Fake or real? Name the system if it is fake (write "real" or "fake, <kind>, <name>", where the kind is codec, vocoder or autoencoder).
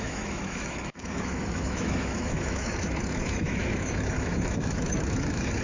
fake, autoencoder, DAC-VAE